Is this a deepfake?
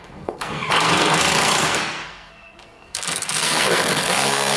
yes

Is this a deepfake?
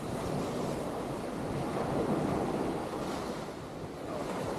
no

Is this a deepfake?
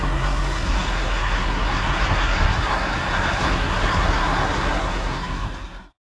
yes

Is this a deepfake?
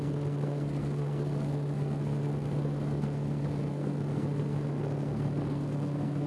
yes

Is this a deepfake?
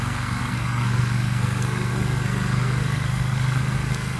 yes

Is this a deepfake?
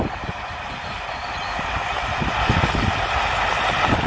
no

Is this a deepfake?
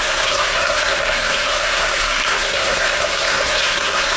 yes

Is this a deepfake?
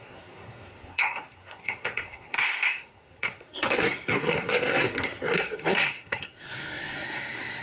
yes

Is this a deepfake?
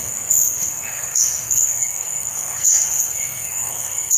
yes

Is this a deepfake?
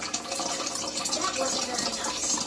no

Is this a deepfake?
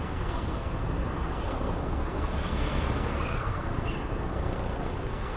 yes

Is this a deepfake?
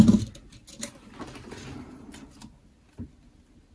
no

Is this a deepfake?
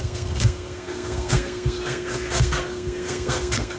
yes